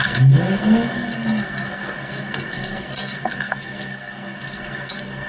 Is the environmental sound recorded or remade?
remade